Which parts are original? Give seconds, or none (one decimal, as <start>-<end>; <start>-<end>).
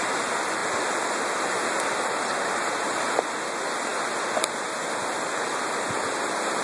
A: 0.0-6.6